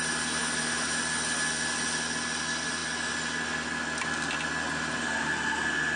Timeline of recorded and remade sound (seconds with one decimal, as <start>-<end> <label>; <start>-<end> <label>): 0.0-0.4 recorded; 0.4-1.0 remade; 1.0-6.0 recorded